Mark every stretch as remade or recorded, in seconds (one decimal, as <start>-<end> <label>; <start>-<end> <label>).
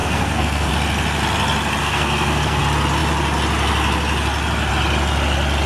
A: 0.0-0.7 remade; 0.7-1.8 recorded; 1.8-2.6 remade; 2.6-5.7 recorded